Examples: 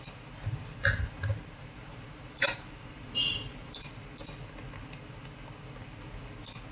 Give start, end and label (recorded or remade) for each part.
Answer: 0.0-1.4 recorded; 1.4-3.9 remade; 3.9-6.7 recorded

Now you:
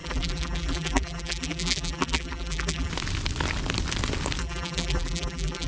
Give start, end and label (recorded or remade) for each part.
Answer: 0.0-2.9 remade; 2.9-4.4 recorded; 4.4-5.7 remade

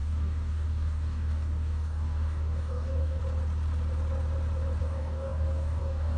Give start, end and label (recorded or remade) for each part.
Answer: 0.0-3.2 remade; 3.2-4.8 recorded; 4.8-6.2 remade

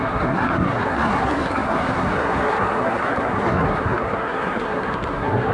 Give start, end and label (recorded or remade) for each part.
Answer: 0.0-5.5 remade

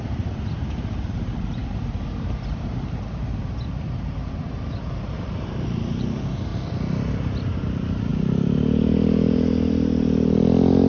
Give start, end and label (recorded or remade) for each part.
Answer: 0.0-6.5 remade; 6.5-7.1 recorded; 7.1-8.1 remade; 8.1-10.9 recorded